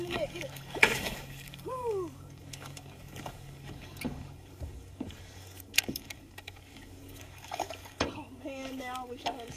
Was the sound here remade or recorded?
remade